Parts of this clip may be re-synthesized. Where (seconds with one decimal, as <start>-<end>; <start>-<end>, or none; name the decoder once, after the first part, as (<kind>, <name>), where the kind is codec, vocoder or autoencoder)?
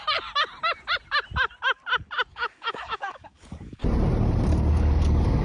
2.3-3.8 (codec, DAC); 4.7-5.4